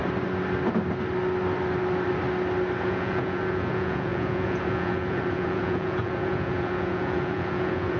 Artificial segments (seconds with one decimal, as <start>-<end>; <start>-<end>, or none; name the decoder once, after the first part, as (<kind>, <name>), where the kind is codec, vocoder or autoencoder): 2.8-8.0 (vocoder, Vocos)